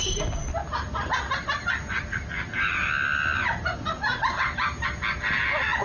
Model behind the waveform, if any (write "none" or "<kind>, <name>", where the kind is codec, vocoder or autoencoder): none